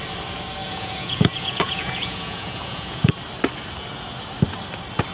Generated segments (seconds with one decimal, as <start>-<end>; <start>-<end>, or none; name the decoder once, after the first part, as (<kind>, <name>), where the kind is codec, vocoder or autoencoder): 0.6-3.1 (vocoder, Vocos)